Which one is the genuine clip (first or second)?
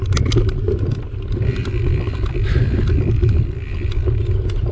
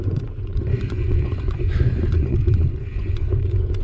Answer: first